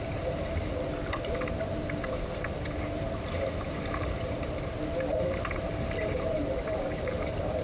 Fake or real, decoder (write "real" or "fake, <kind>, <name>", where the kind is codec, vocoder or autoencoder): fake, vocoder, BigVGAN v2